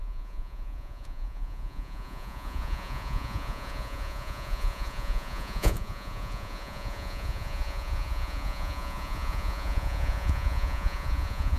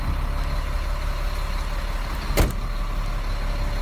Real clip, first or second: second